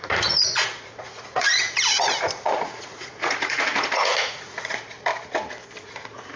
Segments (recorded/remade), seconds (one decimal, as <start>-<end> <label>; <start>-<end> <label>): 0.0-5.1 remade; 5.1-5.8 recorded; 5.8-6.4 remade